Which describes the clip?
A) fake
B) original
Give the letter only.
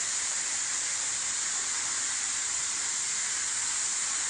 B